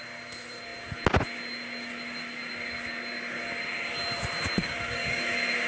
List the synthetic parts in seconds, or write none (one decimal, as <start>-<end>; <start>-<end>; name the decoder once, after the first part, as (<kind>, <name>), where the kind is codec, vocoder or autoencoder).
4.6-5.2 (codec, DAC)